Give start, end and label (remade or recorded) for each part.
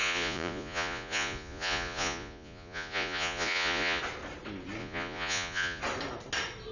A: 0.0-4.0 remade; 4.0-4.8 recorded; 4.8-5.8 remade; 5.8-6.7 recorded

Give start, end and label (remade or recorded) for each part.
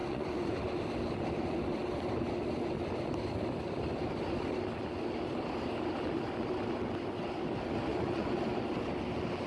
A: 0.0-0.6 remade; 0.6-7.9 recorded; 7.9-8.4 remade; 8.4-9.5 recorded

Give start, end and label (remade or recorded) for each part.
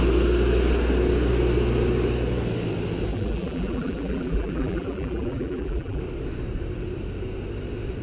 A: 0.0-3.1 recorded; 3.1-6.0 remade; 6.0-8.0 recorded